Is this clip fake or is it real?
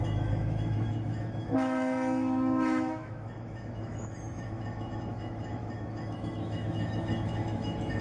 fake